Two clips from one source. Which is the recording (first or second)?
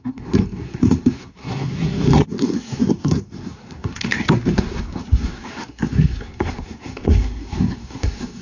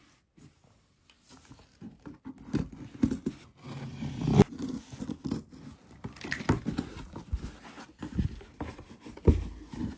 second